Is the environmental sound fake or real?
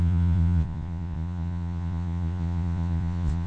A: fake